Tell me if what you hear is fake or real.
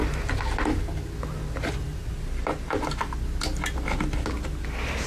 real